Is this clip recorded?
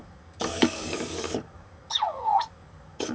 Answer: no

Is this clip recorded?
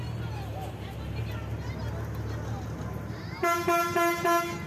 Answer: yes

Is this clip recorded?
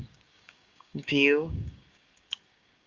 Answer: no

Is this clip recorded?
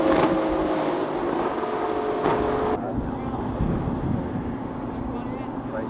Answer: yes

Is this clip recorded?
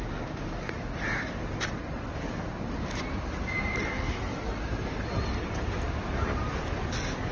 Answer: yes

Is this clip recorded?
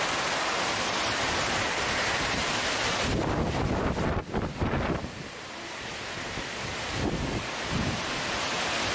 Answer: no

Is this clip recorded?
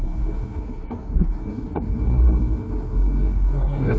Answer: no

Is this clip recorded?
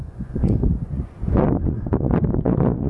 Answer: no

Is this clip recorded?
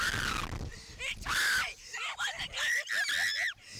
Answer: yes